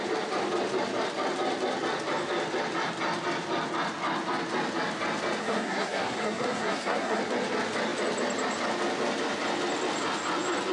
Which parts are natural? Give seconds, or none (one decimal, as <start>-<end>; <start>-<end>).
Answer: 0.0-5.4; 7.2-10.7